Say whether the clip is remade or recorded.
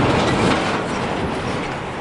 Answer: recorded